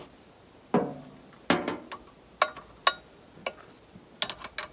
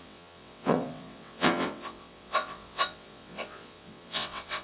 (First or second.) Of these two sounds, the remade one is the second